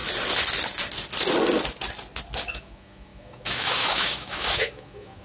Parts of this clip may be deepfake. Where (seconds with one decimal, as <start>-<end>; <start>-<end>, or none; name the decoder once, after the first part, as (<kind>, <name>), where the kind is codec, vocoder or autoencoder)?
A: 2.5-5.2 (autoencoder, DAC-VAE)